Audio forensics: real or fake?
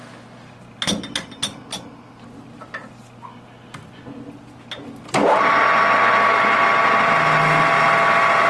real